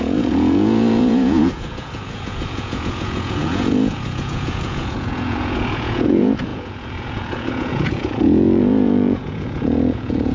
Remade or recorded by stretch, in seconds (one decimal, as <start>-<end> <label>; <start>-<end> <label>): 0.0-10.3 remade